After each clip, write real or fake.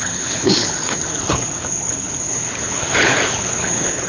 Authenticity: fake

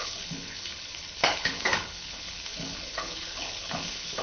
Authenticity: fake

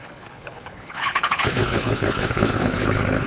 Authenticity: fake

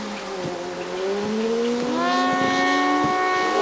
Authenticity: real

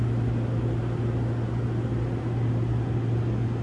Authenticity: real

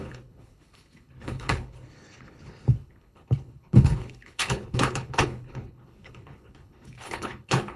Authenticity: fake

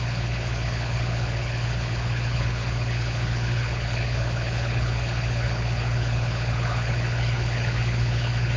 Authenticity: fake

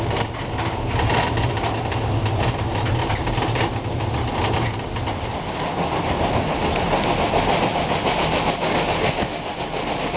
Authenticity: real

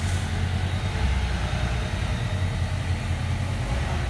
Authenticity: real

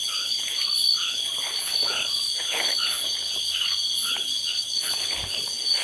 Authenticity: fake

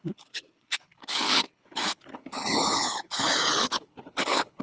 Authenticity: fake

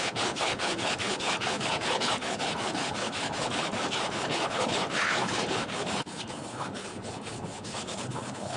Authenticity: fake